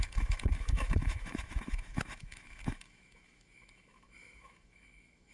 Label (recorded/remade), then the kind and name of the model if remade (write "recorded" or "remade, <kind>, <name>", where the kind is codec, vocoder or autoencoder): remade, autoencoder, DAC-VAE